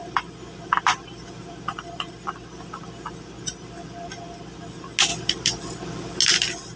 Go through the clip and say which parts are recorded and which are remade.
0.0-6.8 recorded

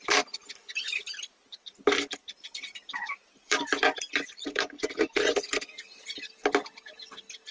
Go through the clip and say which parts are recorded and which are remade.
0.0-2.2 recorded; 2.2-6.0 remade; 6.0-7.5 recorded

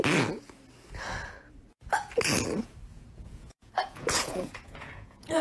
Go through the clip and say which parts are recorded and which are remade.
0.0-2.9 recorded; 2.9-5.4 remade

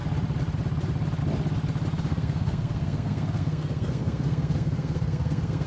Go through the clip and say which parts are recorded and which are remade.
0.0-2.1 recorded; 2.1-5.7 remade

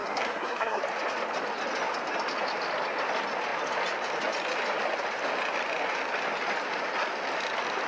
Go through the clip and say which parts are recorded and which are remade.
0.0-0.8 remade; 0.8-7.9 recorded

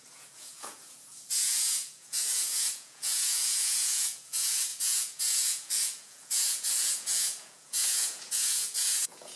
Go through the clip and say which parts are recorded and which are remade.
0.0-9.4 remade

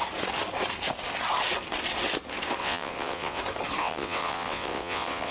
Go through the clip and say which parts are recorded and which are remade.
0.0-2.6 recorded; 2.6-3.4 remade; 3.4-3.8 recorded; 3.8-5.3 remade